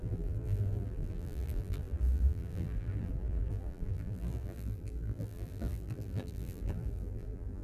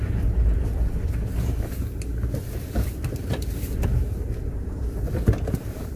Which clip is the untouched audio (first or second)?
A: second